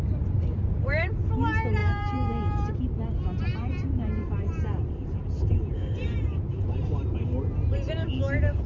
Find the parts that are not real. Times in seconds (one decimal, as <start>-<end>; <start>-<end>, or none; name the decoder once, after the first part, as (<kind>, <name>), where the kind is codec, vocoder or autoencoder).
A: 0.5-1.3 (vocoder, BigVGAN v2); 1.8-3.0; 3.5-8.1